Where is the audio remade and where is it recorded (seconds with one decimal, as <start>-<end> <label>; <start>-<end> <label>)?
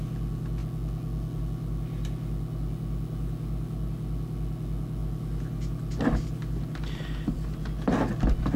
0.0-8.6 recorded